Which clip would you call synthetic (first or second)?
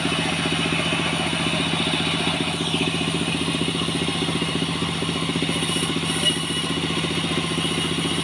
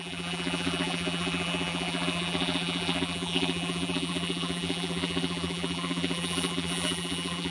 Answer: second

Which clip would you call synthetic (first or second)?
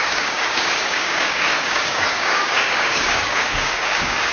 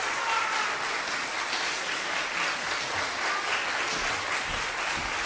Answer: first